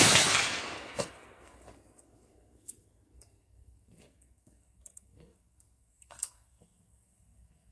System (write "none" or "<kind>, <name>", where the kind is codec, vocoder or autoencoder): codec, SNAC